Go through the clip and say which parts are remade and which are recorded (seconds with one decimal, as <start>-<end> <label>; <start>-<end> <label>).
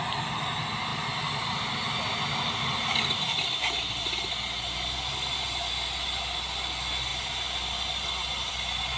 0.0-0.9 recorded; 0.9-1.6 remade; 1.6-9.0 recorded